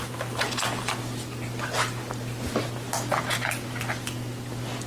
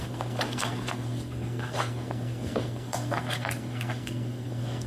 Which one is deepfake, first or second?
second